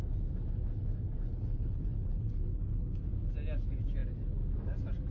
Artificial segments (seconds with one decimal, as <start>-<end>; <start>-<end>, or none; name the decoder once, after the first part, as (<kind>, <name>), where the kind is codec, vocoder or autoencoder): 1.3-3.1 (codec, HILCodec)